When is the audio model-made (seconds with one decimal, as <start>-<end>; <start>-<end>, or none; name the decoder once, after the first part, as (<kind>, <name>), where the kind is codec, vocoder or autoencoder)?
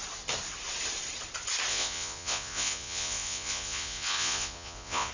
1.7-5.1 (vocoder, Vocos)